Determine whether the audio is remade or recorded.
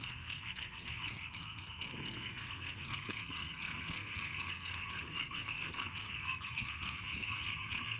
remade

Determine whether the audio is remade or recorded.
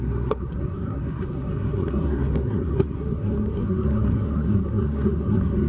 remade